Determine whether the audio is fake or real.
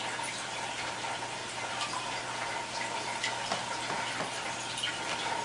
real